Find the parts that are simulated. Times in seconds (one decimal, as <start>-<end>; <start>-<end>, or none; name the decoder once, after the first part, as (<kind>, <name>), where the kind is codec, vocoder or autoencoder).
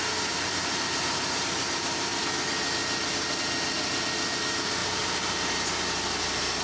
none